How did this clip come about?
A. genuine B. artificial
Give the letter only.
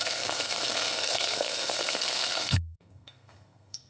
B